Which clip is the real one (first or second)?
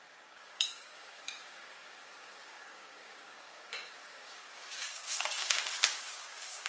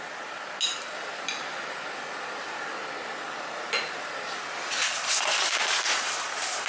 second